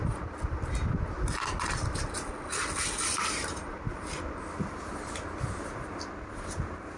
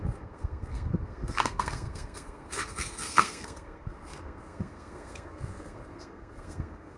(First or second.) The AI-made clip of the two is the second